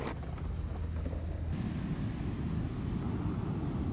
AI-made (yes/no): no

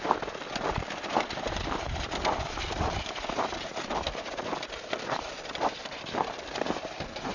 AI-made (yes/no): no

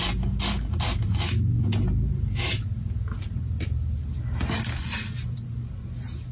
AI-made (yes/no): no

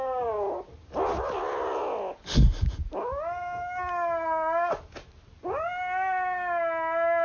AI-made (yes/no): no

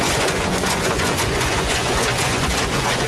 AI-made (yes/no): yes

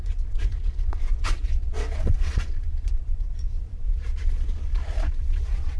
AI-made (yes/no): yes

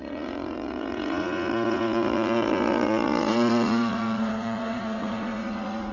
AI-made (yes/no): yes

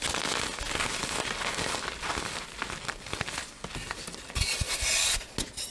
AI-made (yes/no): no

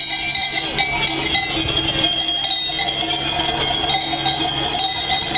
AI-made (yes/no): no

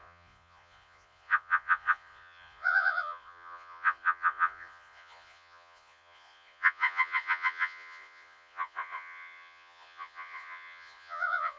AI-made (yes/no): yes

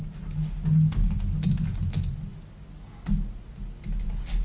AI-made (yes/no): no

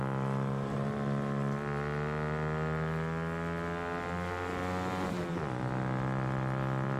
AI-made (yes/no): no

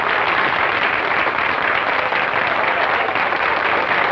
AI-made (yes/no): no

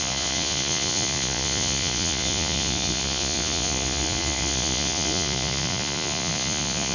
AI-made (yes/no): yes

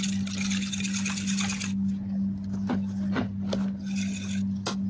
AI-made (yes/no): no